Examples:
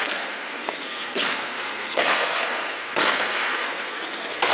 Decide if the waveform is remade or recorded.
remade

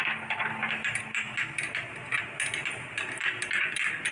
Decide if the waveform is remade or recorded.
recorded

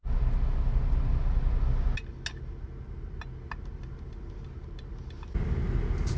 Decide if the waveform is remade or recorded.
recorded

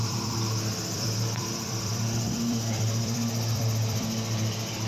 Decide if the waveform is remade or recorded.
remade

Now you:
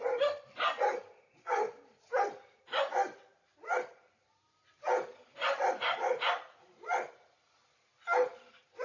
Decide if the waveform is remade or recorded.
recorded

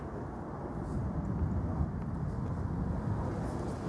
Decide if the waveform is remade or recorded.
recorded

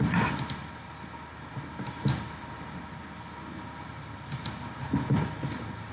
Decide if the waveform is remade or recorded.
recorded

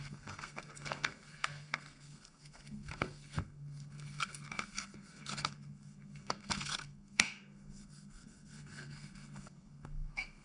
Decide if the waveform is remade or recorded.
remade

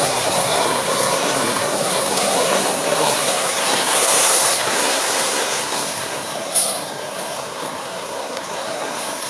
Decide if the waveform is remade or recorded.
remade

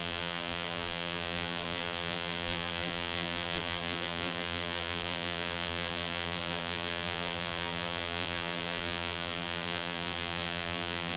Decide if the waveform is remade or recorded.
remade